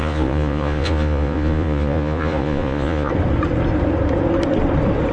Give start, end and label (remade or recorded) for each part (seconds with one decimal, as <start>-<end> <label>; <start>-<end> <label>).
0.0-3.1 remade; 3.1-5.1 recorded